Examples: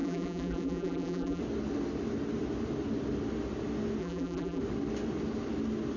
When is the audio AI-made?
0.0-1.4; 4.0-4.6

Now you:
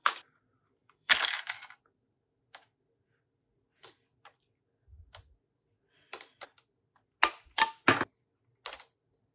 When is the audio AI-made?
0.0-1.2